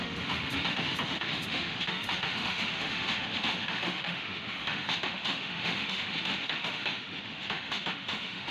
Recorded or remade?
remade